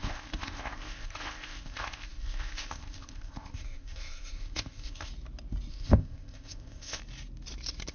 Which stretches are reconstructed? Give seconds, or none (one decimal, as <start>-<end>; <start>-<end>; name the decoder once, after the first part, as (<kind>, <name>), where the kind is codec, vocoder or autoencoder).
0.0-5.1 (codec, ZipCodec); 5.7-7.0